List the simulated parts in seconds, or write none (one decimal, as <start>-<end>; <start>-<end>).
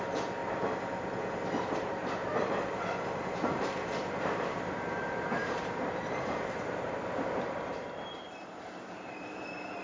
0.0-0.4; 1.5-9.8